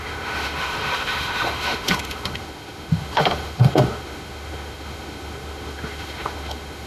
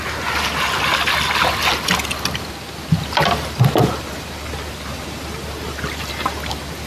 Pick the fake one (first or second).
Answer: first